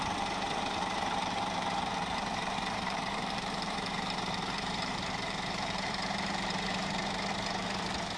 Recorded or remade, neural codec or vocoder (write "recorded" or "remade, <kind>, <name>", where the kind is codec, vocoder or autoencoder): remade, vocoder, BigVGAN v2